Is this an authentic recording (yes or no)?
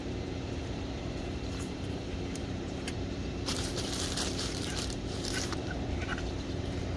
no